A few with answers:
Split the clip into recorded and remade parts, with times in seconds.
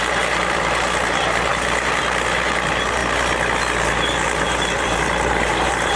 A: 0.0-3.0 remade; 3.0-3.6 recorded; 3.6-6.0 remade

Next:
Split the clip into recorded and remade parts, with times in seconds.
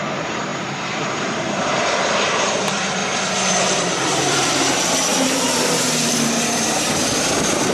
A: 0.0-3.0 remade; 3.0-3.5 recorded; 3.5-7.7 remade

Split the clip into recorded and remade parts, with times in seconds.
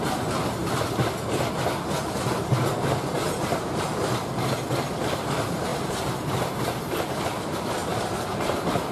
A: 0.0-5.7 recorded; 5.7-6.8 remade; 6.8-7.8 recorded; 7.8-8.9 remade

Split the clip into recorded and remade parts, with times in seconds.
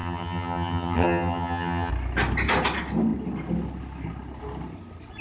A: 0.0-1.9 remade; 1.9-5.2 recorded